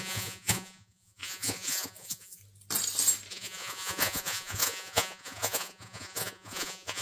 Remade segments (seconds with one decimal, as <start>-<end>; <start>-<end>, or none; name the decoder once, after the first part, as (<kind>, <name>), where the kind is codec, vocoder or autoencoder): 0.0-2.4 (vocoder, Vocos); 3.3-7.0